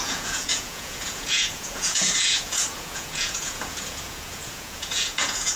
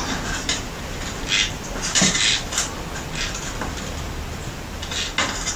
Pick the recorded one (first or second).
second